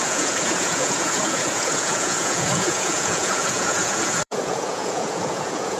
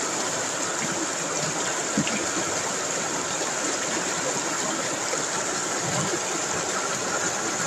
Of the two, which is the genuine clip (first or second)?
second